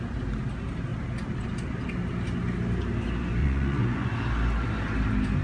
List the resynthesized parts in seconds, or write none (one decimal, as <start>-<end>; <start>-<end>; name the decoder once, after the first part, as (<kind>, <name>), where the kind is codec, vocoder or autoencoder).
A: 3.4-4.1 (vocoder, Vocos)